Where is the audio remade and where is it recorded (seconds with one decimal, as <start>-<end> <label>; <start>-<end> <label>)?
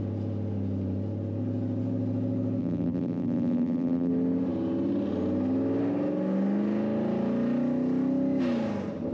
0.0-2.6 recorded; 2.6-4.1 remade; 4.1-9.1 recorded